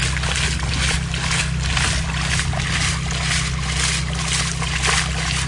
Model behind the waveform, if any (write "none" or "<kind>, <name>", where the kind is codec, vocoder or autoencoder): none